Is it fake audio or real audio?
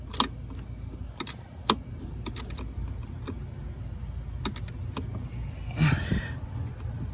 real